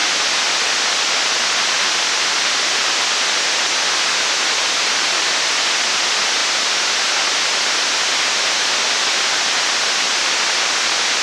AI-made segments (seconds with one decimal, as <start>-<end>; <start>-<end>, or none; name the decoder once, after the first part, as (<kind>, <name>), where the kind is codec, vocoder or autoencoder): none